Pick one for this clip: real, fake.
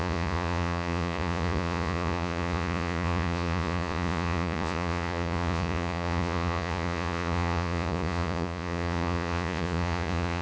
fake